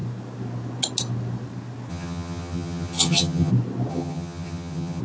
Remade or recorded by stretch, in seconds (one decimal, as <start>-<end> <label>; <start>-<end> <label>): 0.0-1.9 recorded; 1.9-3.5 remade; 3.5-3.9 recorded; 3.9-5.0 remade